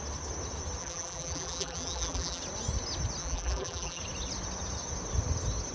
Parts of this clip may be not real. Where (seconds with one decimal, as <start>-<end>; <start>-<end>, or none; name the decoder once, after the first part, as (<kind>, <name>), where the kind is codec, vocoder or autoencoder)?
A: 0.8-2.4 (vocoder, BigVGAN v2); 3.2-4.0